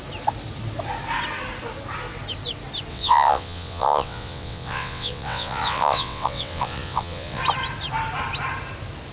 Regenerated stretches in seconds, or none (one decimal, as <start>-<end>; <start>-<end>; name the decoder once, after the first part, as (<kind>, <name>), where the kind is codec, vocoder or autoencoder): 2.9-7.4 (vocoder, WaveNeXt)